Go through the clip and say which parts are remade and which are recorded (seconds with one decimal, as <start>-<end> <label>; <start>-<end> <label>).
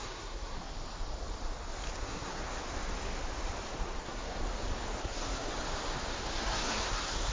0.0-0.7 remade; 0.7-2.0 recorded; 2.0-2.4 remade; 2.4-4.0 recorded; 4.0-4.4 remade; 4.4-5.0 recorded; 5.0-5.5 remade; 5.5-6.2 recorded; 6.2-7.3 remade